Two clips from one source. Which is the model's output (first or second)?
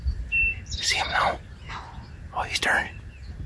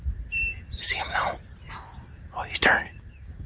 second